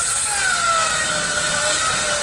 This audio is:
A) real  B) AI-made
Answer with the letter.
A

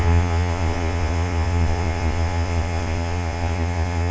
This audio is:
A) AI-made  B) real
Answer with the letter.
A